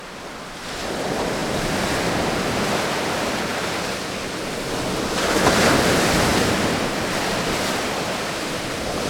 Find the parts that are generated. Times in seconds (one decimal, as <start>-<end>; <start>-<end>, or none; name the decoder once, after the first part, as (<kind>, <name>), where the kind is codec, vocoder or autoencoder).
1.4-2.2 (vocoder, BigVGAN v2); 3.5-4.5; 6.3-9.1